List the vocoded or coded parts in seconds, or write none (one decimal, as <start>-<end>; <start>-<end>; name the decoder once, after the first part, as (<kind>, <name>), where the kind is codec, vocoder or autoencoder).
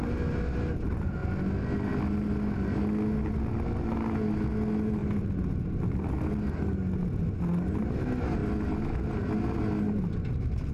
none